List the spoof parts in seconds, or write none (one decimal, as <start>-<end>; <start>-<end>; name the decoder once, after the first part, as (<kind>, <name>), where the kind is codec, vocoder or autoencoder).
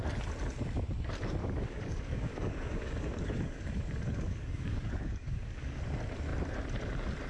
1.4-5.8 (codec, DAC)